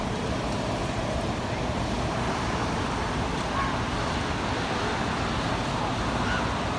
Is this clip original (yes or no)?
no